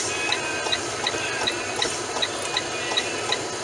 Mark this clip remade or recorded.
recorded